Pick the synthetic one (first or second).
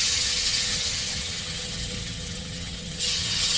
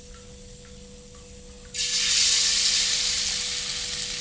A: first